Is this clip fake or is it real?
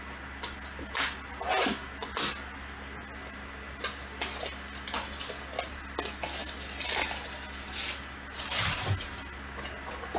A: real